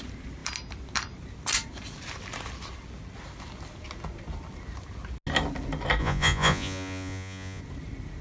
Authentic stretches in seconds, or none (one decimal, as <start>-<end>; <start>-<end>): 0.0-6.0; 7.6-8.2